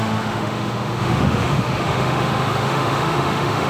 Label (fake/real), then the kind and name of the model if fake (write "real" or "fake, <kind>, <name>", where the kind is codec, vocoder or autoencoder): fake, autoencoder, DAC-VAE